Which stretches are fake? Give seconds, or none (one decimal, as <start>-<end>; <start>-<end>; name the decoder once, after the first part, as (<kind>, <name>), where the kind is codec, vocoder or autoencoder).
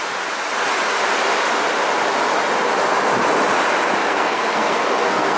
4.0-5.4 (codec, SNAC)